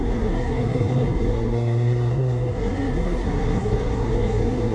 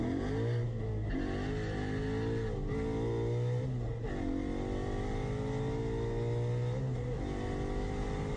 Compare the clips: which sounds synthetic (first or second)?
first